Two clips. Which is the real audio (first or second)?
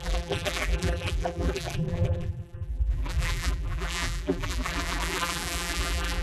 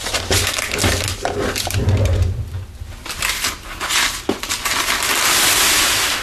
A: second